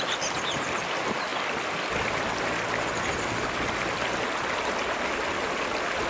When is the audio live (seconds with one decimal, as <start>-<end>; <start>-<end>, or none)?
0.0-6.1